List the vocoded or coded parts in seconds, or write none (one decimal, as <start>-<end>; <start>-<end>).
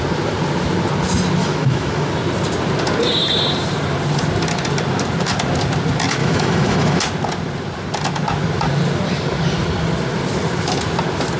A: 1.4-2.1; 6.2-7.0